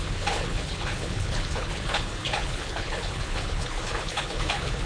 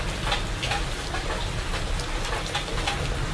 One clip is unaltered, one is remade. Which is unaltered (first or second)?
second